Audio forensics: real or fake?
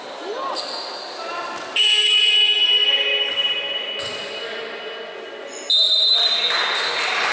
real